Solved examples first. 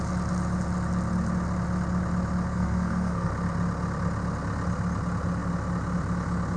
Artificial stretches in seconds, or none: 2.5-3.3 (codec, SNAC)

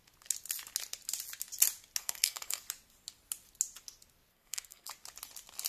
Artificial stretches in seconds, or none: 2.0-2.6 (codec, SNAC); 4.3-4.9

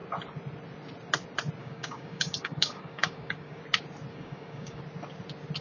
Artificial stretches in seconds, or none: 1.6-3.6 (codec, DAC); 4.1-4.8

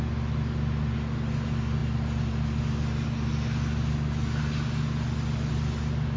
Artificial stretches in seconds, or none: none

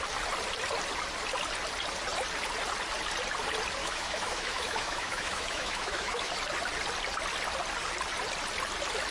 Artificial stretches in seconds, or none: 3.8-6.3 (autoencoder, DAC-VAE)